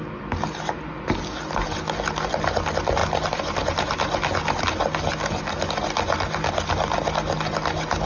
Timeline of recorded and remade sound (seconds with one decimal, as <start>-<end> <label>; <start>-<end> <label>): 0.0-8.1 recorded